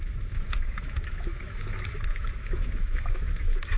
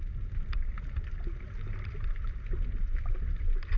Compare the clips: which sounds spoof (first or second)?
first